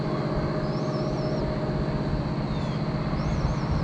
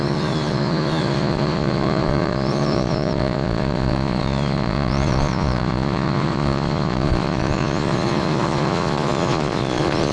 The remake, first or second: second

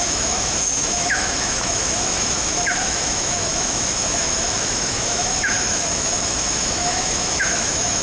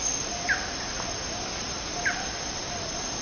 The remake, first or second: first